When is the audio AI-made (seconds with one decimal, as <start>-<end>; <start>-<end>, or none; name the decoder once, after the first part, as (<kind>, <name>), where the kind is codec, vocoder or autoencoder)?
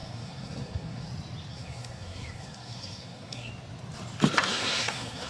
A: 0.0-1.1 (codec, SNAC); 1.5-3.5; 4.5-5.3